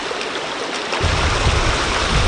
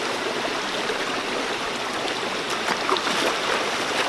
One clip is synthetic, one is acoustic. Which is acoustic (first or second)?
first